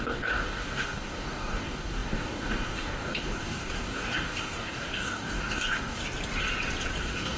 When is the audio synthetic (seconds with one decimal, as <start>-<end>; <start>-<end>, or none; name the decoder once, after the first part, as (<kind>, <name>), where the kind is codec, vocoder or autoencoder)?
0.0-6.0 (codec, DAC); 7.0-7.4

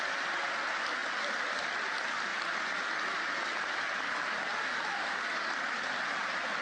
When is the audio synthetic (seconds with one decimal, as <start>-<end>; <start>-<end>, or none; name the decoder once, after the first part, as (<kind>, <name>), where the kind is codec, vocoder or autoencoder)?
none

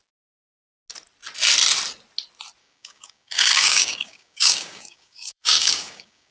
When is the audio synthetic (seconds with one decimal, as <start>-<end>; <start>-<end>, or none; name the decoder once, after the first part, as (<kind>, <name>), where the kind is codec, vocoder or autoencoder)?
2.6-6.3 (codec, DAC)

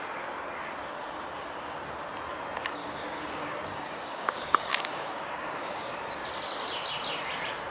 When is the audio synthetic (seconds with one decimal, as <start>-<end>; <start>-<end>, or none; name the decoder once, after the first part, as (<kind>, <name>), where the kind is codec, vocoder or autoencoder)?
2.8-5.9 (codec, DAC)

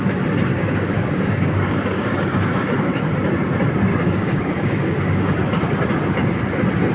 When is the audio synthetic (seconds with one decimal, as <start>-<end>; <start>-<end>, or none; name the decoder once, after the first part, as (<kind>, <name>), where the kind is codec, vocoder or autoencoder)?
0.5-2.9 (codec, DAC); 3.9-5.4

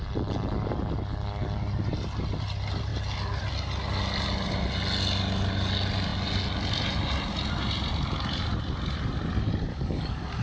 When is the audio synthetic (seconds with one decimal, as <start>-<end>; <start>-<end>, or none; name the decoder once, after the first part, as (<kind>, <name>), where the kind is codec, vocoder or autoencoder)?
9.7-10.4 (codec, DAC)